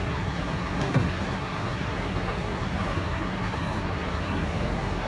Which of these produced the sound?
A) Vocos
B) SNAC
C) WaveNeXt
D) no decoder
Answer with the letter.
B